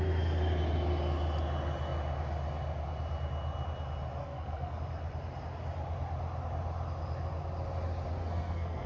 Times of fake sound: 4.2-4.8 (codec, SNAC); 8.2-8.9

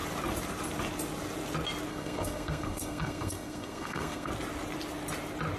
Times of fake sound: 1.9-4.3 (codec, SNAC)

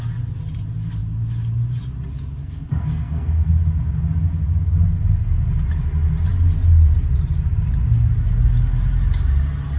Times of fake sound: 2.4-3.5 (codec, SNAC)

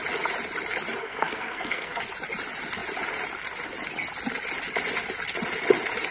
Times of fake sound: 1.0-2.0 (codec, SNAC)

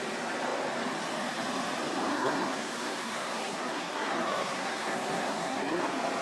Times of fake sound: 2.1-5.8 (codec, SNAC)

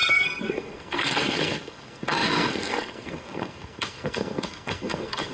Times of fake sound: 0.0-5.3 (codec, SNAC)

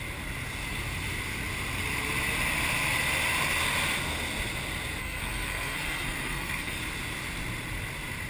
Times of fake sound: 5.0-6.8 (codec, SNAC)